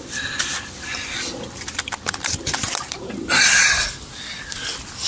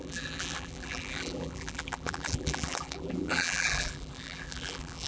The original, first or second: first